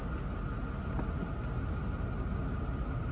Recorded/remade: recorded